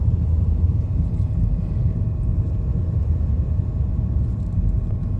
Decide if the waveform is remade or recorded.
remade